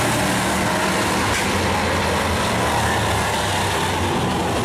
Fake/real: real